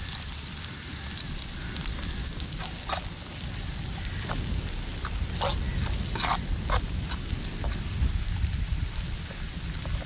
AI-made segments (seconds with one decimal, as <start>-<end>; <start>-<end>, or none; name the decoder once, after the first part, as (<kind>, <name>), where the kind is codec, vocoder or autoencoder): 2.2-2.9 (codec, DAC)